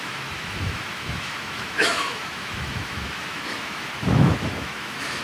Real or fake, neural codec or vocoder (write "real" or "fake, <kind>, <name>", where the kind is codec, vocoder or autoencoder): fake, autoencoder, DAC-VAE